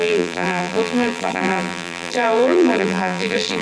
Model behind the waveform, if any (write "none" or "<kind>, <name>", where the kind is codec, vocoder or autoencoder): vocoder, BigVGAN v2